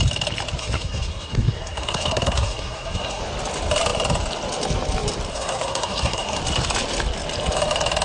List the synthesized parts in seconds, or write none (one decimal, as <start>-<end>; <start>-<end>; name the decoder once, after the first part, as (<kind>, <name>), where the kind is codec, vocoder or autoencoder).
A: 0.6-3.2 (codec, SNAC); 5.3-6.4